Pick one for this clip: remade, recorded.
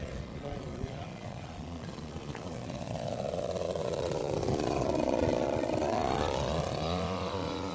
remade